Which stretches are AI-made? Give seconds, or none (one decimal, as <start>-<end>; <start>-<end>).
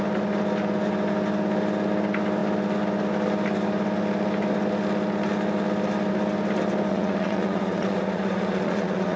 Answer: 6.9-9.2